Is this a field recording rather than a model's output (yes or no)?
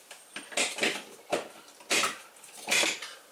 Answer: yes